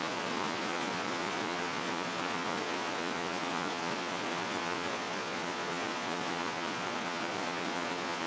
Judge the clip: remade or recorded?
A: remade